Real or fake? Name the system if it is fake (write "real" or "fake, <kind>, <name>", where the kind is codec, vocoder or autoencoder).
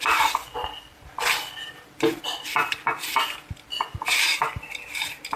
real